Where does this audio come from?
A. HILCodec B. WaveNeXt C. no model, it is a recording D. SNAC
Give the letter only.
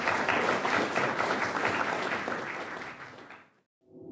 C